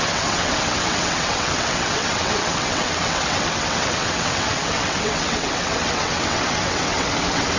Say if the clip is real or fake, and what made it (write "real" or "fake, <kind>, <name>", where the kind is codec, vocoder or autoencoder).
fake, vocoder, WaveNeXt